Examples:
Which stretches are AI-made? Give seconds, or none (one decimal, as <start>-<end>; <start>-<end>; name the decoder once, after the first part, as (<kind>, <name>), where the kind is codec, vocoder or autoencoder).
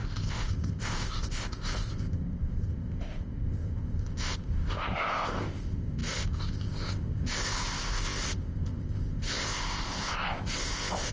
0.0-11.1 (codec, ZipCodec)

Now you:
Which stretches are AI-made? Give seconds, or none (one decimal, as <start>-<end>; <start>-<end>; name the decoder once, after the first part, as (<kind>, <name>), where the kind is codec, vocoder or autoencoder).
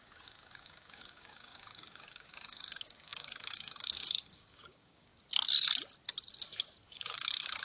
0.0-5.1 (codec, DAC); 6.9-7.6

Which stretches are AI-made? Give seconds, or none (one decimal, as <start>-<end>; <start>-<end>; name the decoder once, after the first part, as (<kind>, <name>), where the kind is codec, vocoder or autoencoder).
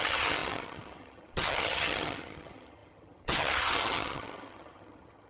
0.0-5.3 (vocoder, HiFi-GAN)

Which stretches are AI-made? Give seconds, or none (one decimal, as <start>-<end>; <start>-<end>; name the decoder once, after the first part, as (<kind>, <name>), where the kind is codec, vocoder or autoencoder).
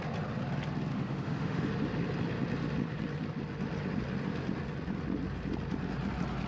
0.9-1.7 (autoencoder, DAC-VAE)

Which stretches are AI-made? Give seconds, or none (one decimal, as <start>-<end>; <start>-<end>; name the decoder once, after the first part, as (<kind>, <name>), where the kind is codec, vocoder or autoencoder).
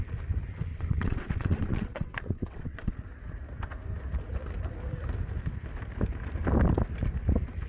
0.7-2.9 (vocoder, WaveNeXt)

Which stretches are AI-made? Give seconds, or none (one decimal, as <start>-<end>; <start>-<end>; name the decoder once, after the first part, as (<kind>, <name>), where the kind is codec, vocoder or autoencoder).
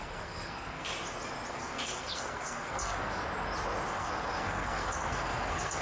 0.0-0.9 (codec, SNAC); 1.5-3.2; 3.9-5.8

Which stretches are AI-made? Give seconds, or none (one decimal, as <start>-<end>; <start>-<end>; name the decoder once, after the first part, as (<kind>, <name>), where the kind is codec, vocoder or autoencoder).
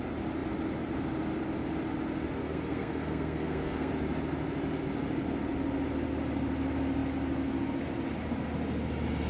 2.4-3.9 (codec, SNAC)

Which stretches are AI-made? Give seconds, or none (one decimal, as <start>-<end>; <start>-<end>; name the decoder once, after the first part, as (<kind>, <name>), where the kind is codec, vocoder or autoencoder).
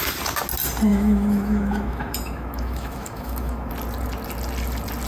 0.9-3.7 (autoencoder, DAC-VAE)